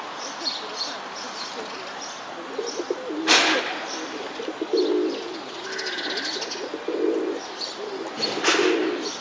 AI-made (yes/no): no